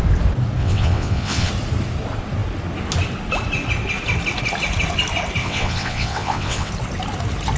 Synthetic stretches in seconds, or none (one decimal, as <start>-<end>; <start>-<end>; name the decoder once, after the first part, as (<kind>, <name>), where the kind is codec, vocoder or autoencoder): 0.6-1.5 (vocoder, WaveNeXt); 5.4-6.7

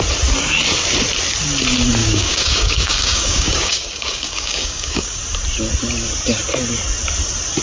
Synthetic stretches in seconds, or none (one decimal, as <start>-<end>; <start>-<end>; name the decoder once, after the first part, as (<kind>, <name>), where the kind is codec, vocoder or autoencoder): 2.0-5.2 (codec, DAC)

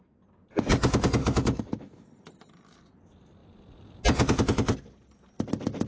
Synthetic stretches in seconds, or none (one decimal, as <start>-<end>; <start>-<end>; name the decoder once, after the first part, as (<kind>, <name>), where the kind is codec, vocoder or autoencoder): 1.2-2.1 (autoencoder, DAC-VAE)

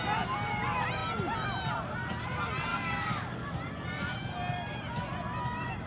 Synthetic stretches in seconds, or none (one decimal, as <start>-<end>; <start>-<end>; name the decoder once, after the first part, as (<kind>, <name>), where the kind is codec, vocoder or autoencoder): 2.7-3.5 (codec, DAC)

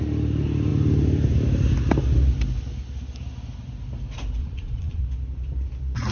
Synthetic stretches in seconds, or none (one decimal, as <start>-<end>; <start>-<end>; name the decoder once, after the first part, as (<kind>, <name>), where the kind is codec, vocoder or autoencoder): 4.4-5.0 (vocoder, Vocos)

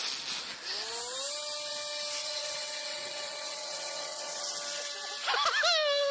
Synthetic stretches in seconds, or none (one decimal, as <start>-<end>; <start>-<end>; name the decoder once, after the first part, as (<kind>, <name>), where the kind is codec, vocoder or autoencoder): 2.2-4.4 (vocoder, WaveNeXt)

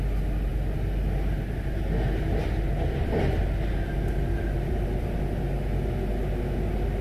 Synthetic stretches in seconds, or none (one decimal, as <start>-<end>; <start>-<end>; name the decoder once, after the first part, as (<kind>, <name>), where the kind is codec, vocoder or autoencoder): none

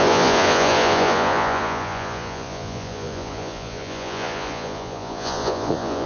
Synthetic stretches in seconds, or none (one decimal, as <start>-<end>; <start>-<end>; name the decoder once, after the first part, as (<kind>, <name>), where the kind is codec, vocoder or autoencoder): 0.0-6.1 (vocoder, Vocos)